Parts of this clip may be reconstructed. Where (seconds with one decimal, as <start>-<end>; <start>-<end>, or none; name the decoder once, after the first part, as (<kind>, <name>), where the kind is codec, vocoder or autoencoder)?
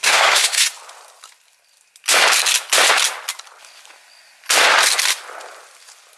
0.0-0.7 (codec, SNAC)